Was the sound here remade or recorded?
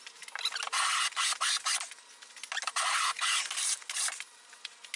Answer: recorded